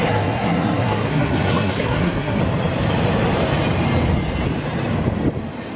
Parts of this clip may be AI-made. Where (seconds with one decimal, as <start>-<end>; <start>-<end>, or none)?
0.0-2.4